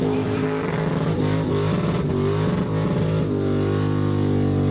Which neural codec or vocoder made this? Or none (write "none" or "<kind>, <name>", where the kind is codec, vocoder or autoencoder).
none